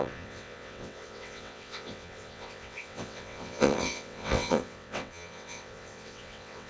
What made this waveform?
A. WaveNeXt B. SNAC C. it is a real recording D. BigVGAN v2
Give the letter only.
A